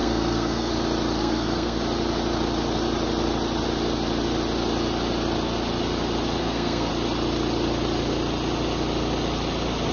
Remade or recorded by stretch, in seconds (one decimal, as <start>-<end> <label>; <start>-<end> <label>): 0.0-0.7 remade; 0.7-1.2 recorded; 1.2-1.8 remade; 1.8-6.4 recorded; 6.4-6.9 remade; 6.9-9.9 recorded